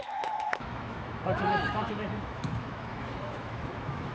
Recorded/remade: remade